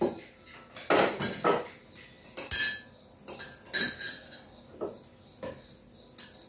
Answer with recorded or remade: recorded